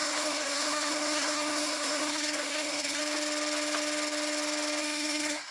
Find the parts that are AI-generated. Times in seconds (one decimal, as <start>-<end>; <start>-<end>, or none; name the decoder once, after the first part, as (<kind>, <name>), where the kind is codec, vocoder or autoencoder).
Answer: 0.0-3.0 (codec, SNAC); 4.8-5.5